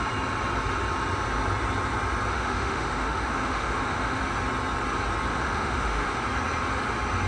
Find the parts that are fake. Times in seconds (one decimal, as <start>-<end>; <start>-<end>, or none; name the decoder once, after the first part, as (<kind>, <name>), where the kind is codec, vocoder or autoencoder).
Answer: 2.3-4.2 (autoencoder, DAC-VAE); 5.3-6.2